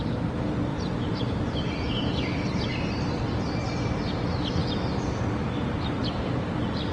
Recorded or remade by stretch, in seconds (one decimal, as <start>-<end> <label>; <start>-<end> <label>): 0.0-0.7 recorded; 0.7-2.3 remade; 2.3-6.9 recorded